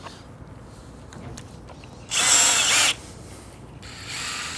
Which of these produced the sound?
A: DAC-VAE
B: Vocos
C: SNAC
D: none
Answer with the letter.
D